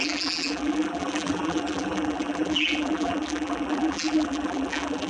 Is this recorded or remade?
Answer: remade